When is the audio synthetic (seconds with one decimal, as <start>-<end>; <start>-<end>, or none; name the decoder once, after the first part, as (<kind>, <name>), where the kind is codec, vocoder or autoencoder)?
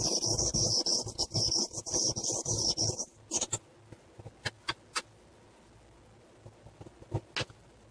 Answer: none